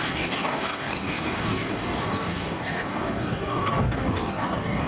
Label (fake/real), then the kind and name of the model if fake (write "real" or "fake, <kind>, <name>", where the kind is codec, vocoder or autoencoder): fake, codec, DAC